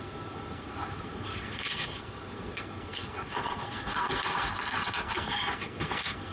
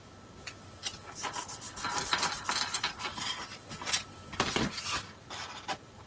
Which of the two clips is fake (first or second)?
first